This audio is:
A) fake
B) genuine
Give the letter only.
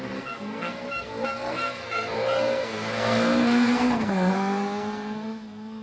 A